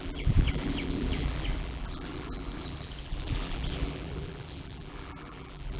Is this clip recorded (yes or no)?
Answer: no